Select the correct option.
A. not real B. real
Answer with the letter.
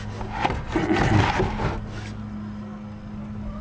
B